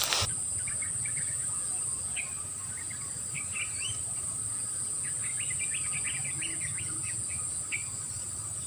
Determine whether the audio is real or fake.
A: real